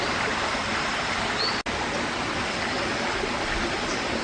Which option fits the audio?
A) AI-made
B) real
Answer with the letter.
B